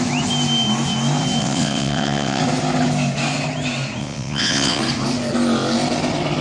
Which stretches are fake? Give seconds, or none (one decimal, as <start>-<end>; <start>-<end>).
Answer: 1.4-2.4; 4.0-4.8

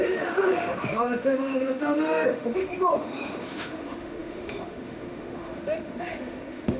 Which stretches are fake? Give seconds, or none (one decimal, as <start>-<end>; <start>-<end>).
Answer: 0.0-6.8

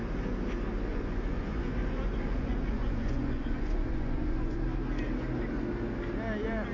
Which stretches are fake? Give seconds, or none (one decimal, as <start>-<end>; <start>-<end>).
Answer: 0.9-4.6

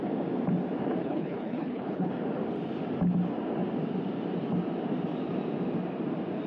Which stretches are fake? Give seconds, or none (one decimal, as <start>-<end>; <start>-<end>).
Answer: 1.0-2.1

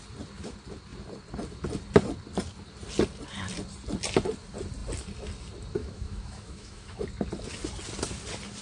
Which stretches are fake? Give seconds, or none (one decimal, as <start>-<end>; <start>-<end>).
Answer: 5.8-7.0

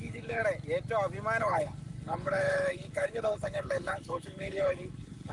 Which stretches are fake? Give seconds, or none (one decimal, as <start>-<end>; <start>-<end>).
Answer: 0.0-0.4; 1.4-5.3

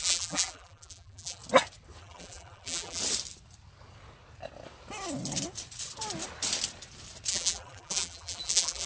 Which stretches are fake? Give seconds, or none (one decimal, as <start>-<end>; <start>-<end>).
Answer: 0.0-1.4; 2.0-3.0; 7.3-8.9